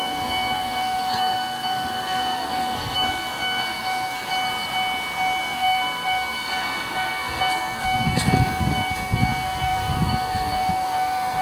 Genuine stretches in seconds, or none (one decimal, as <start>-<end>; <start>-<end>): 4.3-5.4